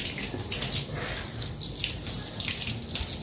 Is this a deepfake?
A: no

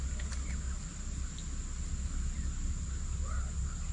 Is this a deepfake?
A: no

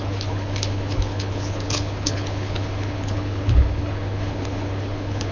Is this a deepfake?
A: yes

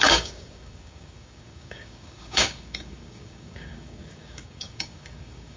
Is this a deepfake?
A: yes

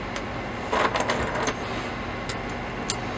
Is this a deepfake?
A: no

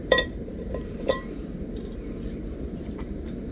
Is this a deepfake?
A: yes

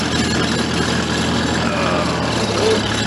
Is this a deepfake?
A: no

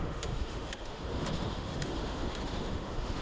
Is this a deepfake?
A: yes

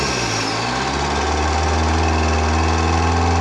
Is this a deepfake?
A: no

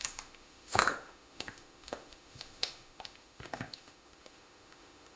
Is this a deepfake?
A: yes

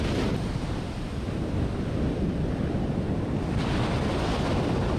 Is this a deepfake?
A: no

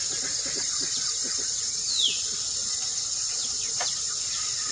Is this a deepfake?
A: no